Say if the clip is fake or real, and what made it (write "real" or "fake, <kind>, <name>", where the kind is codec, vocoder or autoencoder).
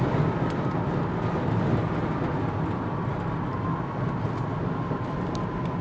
real